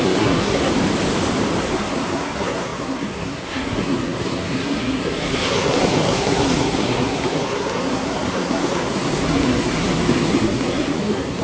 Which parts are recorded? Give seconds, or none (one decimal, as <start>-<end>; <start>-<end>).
0.7-1.6